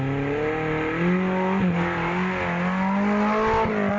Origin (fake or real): real